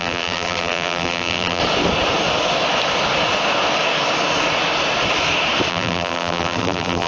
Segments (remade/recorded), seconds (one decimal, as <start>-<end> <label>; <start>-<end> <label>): 0.0-1.6 remade; 1.6-5.7 recorded; 5.7-7.1 remade